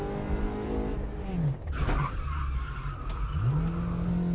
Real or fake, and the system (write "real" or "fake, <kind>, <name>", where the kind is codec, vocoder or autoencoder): real